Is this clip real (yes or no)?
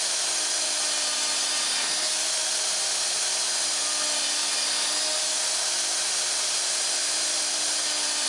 yes